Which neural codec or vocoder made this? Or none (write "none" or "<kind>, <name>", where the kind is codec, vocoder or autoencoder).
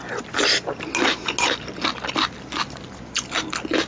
none